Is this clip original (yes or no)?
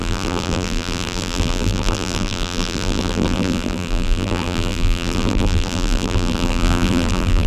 no